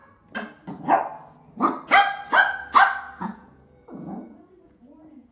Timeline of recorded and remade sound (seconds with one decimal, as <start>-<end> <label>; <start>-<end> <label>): 0.0-3.2 recorded; 3.2-5.3 remade